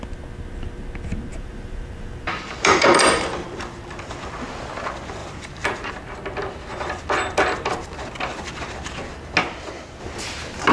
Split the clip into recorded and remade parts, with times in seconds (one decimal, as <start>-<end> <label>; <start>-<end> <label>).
0.0-1.3 recorded; 1.3-4.1 remade; 4.1-5.2 recorded; 5.2-5.9 remade; 5.9-10.7 recorded